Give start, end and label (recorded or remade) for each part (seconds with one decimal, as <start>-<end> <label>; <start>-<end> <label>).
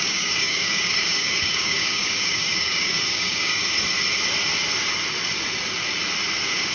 0.0-3.6 remade; 3.6-6.7 recorded